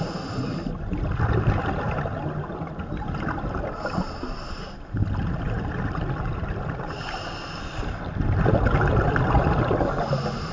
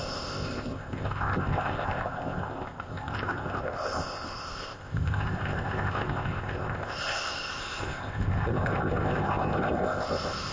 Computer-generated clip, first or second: second